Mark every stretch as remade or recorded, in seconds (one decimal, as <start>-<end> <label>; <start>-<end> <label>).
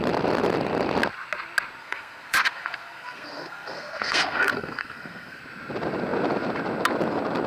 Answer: 0.0-1.8 recorded; 1.8-5.4 remade; 5.4-7.5 recorded